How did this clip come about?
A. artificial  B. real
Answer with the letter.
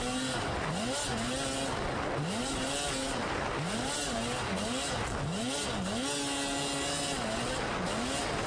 B